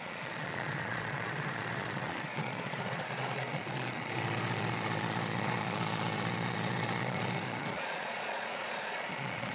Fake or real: fake